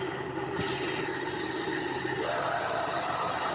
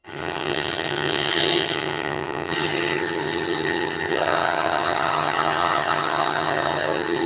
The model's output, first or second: second